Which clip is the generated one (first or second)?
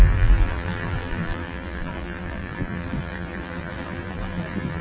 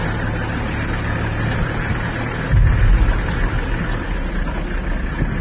first